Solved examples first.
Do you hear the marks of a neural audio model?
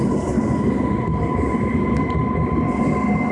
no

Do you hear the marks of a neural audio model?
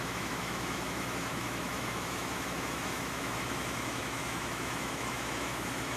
yes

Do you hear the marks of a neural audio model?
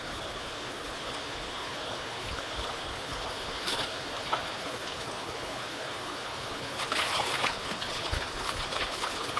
yes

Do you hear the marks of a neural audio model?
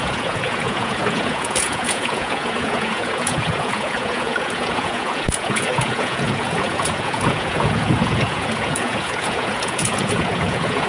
yes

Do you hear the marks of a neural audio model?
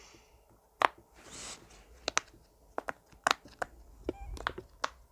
no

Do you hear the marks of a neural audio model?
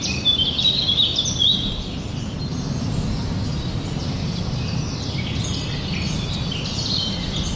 no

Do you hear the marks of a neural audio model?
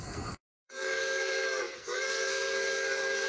yes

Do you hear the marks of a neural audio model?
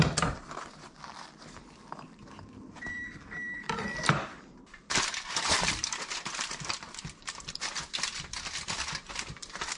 yes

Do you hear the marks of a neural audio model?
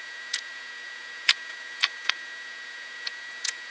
yes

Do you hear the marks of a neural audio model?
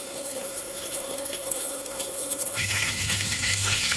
yes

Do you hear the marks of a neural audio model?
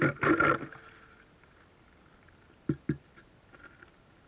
no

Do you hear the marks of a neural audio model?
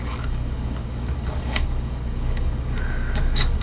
yes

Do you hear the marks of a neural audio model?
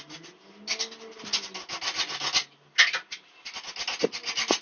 no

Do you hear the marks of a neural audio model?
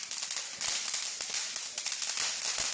no